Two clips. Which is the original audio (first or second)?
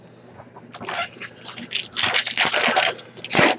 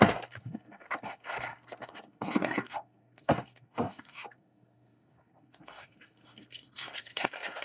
first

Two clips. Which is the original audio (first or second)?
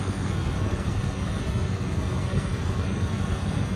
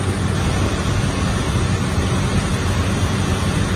second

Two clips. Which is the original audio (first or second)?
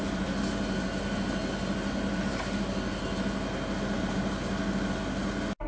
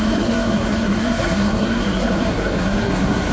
first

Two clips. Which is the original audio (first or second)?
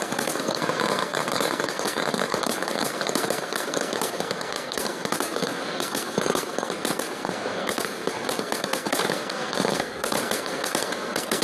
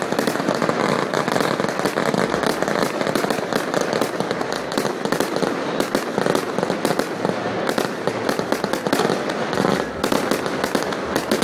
second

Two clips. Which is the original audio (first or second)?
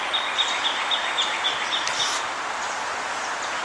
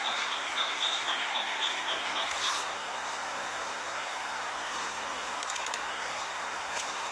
first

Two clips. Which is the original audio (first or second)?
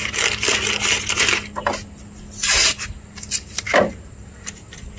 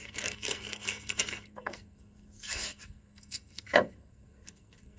first